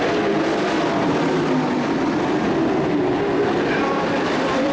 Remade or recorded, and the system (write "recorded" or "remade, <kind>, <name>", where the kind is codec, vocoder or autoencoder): remade, vocoder, BigVGAN v2